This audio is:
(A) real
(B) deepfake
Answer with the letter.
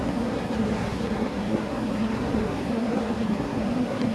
B